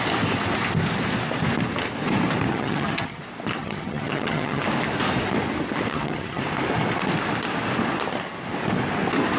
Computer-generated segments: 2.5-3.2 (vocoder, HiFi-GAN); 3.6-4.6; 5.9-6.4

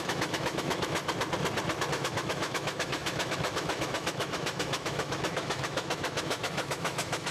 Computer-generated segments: 0.0-1.0 (autoencoder, DAC-VAE); 1.9-7.3